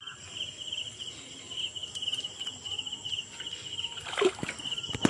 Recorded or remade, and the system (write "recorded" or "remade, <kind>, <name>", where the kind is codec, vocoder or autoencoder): recorded